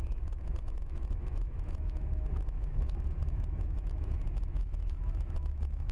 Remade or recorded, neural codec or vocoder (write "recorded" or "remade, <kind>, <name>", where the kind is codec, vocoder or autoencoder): remade, autoencoder, DAC-VAE